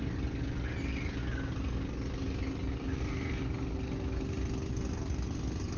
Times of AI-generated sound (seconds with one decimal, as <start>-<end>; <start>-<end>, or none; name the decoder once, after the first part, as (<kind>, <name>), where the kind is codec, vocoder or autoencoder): none